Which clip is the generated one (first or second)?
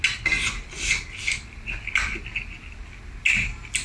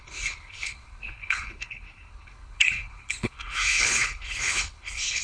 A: second